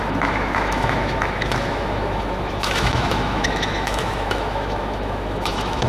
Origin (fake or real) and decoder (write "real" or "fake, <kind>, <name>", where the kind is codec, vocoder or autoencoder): fake, autoencoder, DAC-VAE